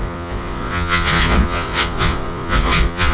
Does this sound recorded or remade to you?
remade